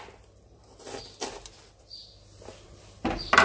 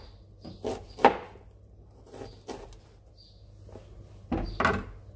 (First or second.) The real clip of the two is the second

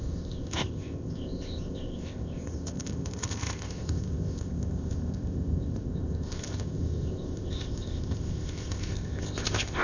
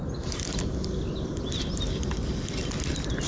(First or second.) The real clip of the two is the second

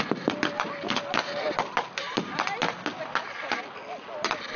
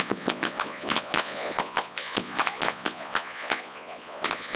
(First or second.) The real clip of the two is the first